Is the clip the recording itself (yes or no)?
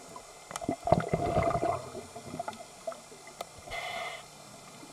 yes